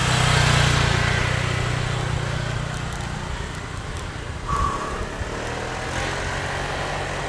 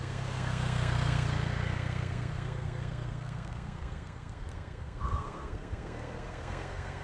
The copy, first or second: second